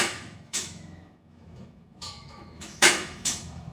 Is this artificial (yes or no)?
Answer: yes